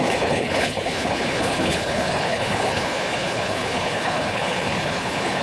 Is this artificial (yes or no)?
yes